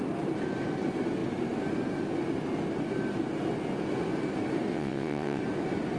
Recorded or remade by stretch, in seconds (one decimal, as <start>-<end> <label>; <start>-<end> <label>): 0.0-4.7 recorded; 4.7-5.4 remade; 5.4-6.0 recorded